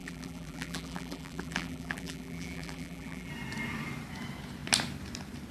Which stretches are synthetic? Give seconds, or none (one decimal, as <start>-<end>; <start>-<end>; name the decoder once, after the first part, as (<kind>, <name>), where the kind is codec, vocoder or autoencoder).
0.0-3.3 (vocoder, BigVGAN v2)